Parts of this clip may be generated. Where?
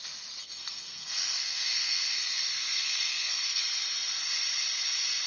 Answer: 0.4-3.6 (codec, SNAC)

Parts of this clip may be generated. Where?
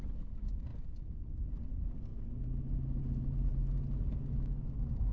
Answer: none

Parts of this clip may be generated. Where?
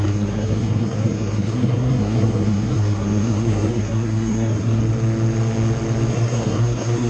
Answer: 0.0-4.8 (codec, SNAC); 6.1-7.1